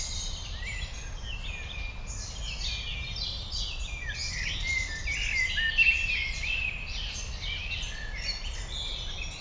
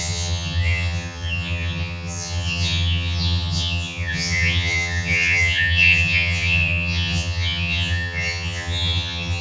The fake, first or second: second